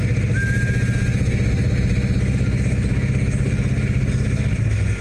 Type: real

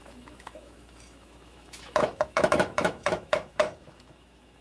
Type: fake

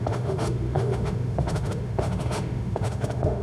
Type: fake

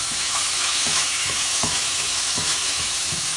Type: fake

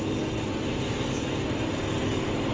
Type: real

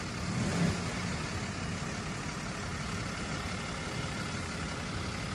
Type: real